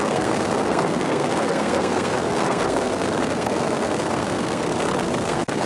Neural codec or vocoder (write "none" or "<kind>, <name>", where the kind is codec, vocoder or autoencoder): codec, SNAC